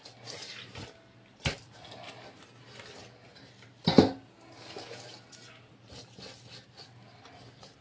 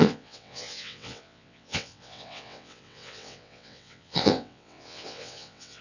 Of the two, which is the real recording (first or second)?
first